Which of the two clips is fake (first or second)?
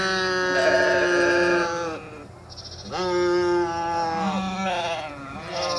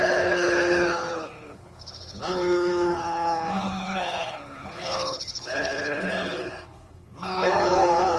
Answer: second